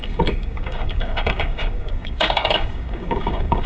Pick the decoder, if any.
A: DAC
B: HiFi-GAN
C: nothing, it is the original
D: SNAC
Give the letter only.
A